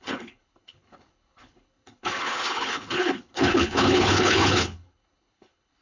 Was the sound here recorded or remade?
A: remade